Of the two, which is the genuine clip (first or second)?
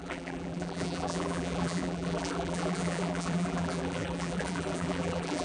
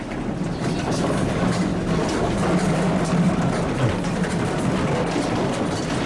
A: second